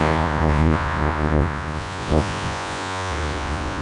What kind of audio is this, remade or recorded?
remade